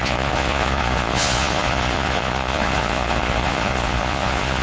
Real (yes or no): no